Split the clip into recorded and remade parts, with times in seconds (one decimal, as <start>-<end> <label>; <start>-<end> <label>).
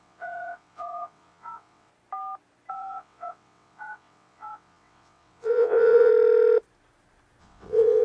0.0-1.9 remade; 1.9-2.7 recorded; 2.7-6.1 remade; 6.1-7.4 recorded; 7.4-8.0 remade